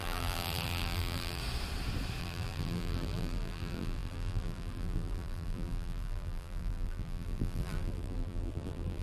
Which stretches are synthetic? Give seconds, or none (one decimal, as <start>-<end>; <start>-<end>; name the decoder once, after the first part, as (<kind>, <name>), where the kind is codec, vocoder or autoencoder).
0.0-1.4 (vocoder, BigVGAN v2); 2.2-9.0